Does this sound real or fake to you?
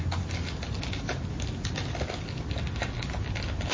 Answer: real